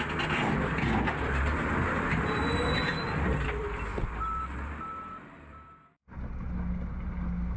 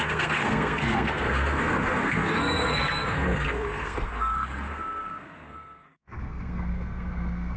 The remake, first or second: second